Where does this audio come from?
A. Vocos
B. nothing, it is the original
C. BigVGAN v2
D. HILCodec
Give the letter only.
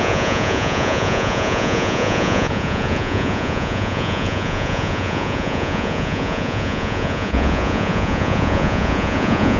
A